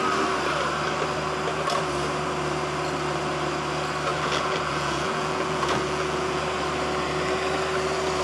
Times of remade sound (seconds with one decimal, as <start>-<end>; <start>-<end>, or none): 4.1-6.4